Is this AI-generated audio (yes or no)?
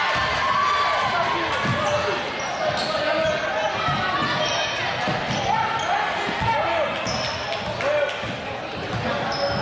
no